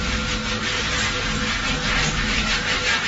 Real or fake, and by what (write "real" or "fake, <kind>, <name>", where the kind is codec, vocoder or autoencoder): real